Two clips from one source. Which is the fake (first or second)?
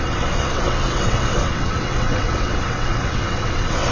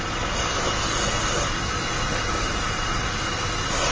first